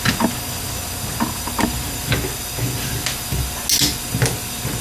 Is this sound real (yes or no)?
yes